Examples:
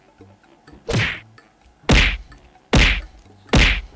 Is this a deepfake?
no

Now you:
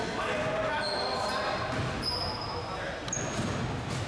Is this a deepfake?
no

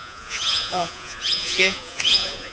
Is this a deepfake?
yes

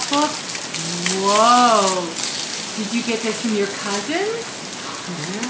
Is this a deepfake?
no